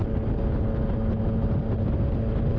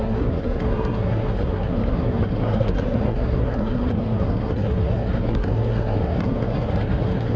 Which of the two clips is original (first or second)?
first